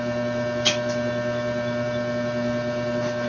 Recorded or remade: recorded